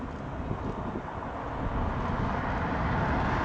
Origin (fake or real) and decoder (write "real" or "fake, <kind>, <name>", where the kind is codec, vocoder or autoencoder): real